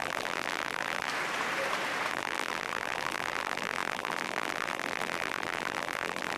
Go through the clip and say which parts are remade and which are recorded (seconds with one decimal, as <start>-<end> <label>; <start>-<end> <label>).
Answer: 0.0-1.1 remade; 1.1-2.1 recorded; 2.1-6.4 remade